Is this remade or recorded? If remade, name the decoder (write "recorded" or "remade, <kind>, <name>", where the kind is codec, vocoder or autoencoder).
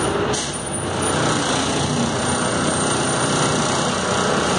recorded